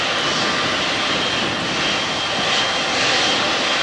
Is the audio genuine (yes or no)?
yes